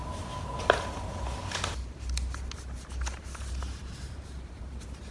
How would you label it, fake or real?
real